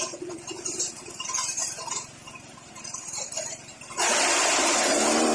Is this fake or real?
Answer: real